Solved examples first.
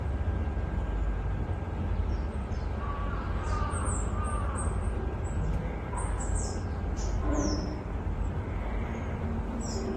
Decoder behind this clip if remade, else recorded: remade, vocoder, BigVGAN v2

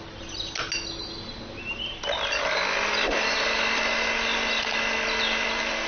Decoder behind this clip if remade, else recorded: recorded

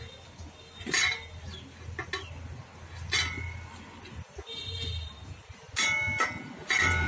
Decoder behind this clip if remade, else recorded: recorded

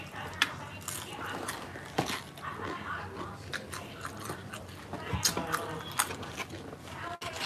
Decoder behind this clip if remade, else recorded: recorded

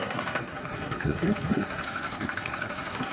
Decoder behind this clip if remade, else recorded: remade, codec, SNAC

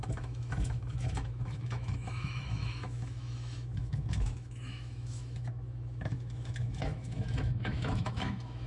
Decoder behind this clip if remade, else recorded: remade, autoencoder, DAC-VAE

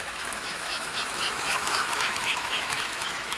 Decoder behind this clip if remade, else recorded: remade, autoencoder, DAC-VAE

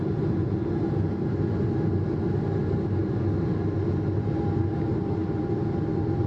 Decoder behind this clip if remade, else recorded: recorded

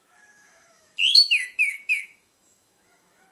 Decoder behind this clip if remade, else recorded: remade, autoencoder, DAC-VAE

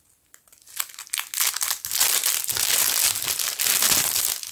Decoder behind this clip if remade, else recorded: recorded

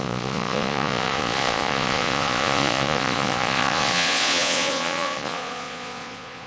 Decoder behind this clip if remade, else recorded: remade, vocoder, Vocos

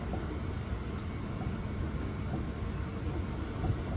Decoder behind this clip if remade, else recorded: recorded